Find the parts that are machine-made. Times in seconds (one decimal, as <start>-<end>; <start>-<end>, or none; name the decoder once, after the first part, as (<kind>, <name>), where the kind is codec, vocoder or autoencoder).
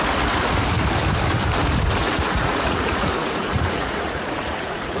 2.0-5.0 (vocoder, Vocos)